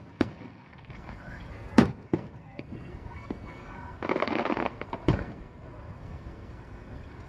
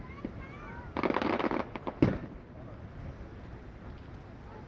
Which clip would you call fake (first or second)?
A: first